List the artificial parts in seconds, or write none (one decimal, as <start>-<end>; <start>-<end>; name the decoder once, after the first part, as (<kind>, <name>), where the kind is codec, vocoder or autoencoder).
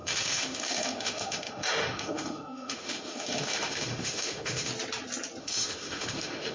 0.0-4.7 (autoencoder, DAC-VAE); 5.4-6.5